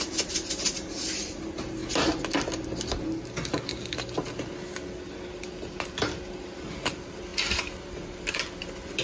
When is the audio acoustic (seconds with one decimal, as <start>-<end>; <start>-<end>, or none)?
0.0-9.0